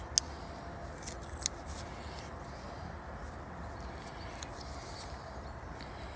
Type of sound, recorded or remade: recorded